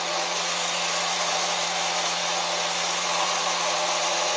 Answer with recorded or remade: remade